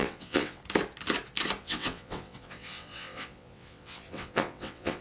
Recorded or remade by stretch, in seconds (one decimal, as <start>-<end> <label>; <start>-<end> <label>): 0.0-0.6 remade; 0.6-1.6 recorded; 1.6-5.0 remade